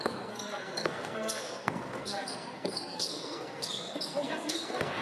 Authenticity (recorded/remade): remade